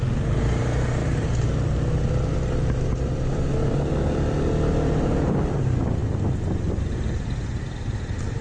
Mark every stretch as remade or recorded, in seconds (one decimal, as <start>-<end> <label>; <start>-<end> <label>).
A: 0.0-8.4 recorded